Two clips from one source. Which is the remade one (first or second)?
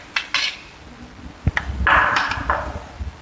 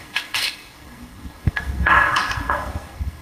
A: second